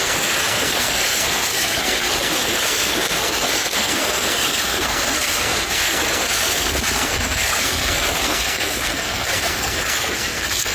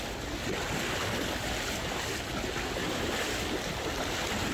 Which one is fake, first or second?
first